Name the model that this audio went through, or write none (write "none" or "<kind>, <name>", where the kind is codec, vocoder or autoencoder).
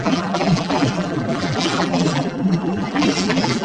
vocoder, BigVGAN v2